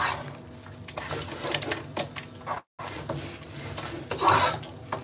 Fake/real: real